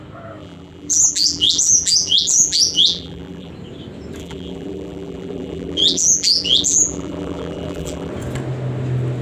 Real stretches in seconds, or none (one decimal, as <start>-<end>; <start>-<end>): 0.0-0.4; 3.5-4.2; 8.1-9.2